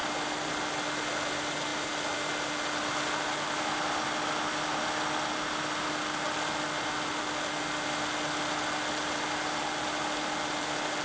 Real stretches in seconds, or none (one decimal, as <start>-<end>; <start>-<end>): 0.0-11.0